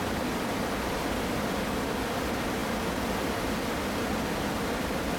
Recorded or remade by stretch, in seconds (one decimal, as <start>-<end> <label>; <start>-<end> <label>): 0.0-5.2 recorded